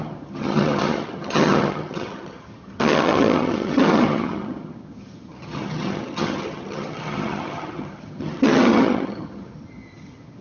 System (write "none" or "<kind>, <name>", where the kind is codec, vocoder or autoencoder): vocoder, HiFi-GAN